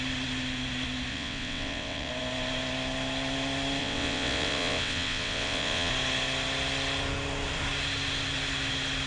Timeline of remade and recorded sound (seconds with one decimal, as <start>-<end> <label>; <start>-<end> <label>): 0.0-1.1 recorded; 1.1-2.1 remade; 2.1-3.8 recorded; 3.8-5.9 remade; 5.9-9.1 recorded